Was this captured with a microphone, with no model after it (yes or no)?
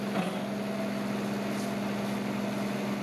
yes